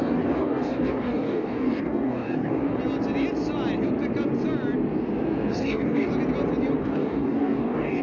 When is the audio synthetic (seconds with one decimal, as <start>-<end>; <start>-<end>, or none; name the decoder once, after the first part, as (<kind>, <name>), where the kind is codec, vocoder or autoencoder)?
0.0-2.6 (codec, DAC); 5.5-6.1; 6.8-8.0